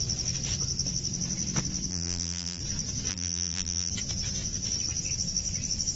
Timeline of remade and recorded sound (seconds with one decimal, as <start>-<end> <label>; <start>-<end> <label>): 0.0-1.9 recorded; 1.9-2.6 remade; 2.6-3.1 recorded; 3.1-3.9 remade; 3.9-6.0 recorded